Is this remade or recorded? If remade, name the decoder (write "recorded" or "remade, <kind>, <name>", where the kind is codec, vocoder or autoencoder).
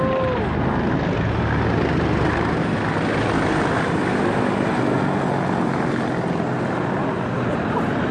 recorded